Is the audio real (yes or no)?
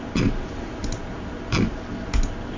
yes